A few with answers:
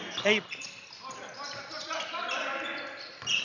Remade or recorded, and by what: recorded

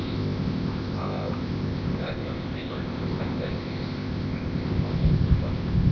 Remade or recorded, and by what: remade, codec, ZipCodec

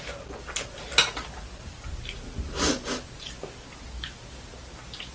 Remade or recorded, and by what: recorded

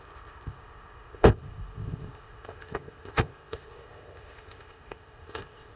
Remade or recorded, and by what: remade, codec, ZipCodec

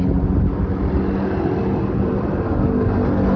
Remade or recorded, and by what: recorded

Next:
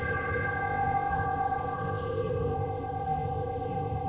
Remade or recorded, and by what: remade, codec, ZipCodec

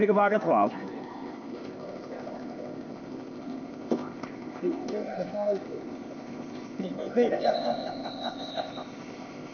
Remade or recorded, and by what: remade, codec, ZipCodec